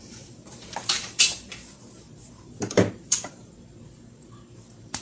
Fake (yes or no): yes